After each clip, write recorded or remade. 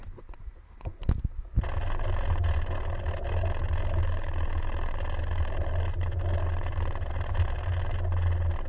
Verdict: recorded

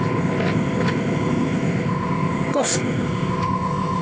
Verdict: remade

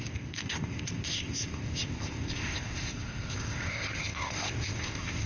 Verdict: remade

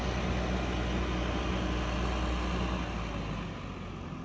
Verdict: recorded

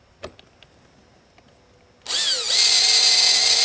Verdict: recorded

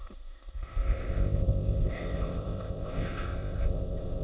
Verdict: remade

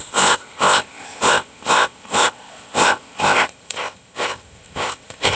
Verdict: remade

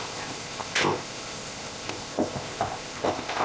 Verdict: remade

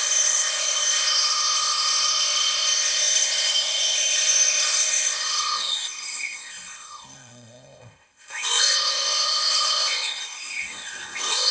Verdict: remade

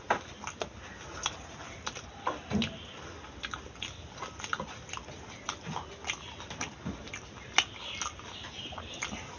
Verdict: recorded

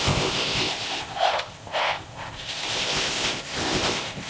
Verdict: remade